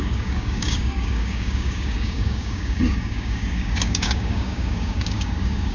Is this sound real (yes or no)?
no